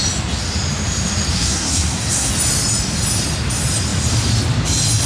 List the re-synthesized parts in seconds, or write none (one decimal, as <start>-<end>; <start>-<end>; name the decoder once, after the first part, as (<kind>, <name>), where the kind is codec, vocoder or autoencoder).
1.3-2.3 (codec, SNAC)